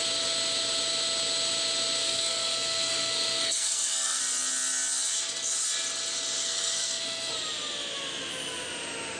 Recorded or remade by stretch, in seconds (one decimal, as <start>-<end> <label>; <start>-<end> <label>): 0.0-2.0 recorded; 2.0-4.2 remade; 4.2-6.4 recorded; 6.4-7.3 remade; 7.3-9.2 recorded